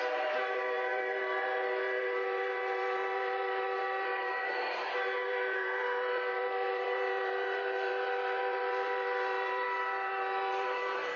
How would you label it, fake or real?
fake